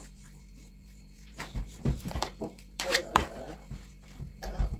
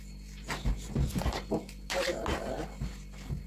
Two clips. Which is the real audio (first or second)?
second